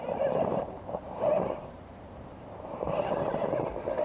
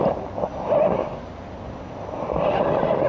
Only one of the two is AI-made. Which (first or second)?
first